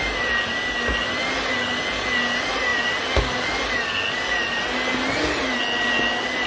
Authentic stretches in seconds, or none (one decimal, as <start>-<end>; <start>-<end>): 0.0-6.5